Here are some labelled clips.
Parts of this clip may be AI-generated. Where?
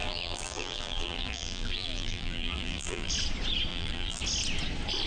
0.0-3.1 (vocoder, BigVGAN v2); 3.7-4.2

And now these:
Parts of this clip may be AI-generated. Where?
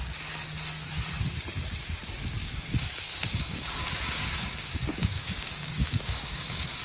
2.4-6.8 (codec, DAC)